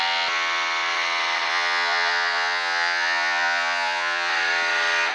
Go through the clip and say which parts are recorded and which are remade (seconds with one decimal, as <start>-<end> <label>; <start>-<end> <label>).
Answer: 0.0-1.5 recorded; 1.5-4.3 remade; 4.3-5.1 recorded